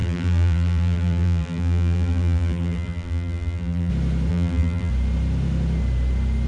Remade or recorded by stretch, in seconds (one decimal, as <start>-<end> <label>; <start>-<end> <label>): 0.0-3.9 remade; 3.9-4.3 recorded; 4.3-4.9 remade; 4.9-6.5 recorded